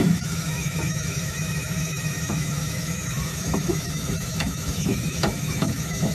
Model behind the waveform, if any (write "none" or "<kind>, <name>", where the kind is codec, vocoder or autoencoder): autoencoder, DAC-VAE